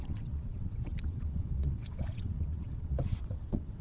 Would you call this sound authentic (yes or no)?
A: no